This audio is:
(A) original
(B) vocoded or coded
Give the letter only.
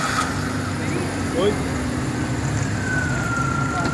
A